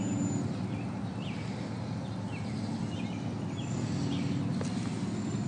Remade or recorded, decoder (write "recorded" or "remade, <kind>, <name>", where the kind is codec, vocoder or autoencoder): recorded